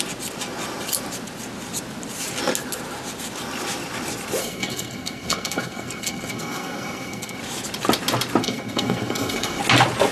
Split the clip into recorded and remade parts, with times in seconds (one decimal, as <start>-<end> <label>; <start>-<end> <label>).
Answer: 0.0-4.4 recorded; 4.4-7.4 remade; 7.4-8.4 recorded; 8.4-9.6 remade; 9.6-10.1 recorded